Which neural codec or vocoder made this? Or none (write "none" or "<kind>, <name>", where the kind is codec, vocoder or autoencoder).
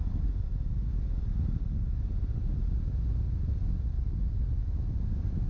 none